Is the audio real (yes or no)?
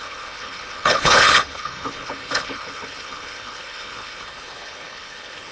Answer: no